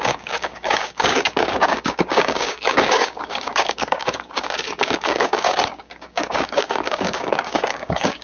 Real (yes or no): no